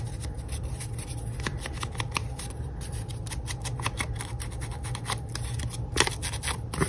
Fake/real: real